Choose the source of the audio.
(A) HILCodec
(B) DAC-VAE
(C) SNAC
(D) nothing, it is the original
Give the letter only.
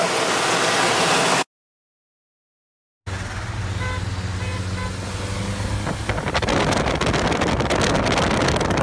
D